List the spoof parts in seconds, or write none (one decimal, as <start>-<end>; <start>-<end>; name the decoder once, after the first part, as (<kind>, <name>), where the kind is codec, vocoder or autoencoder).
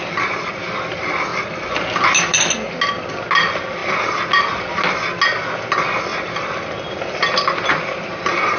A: none